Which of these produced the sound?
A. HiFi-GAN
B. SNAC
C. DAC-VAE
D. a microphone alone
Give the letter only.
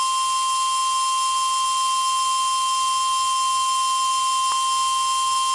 D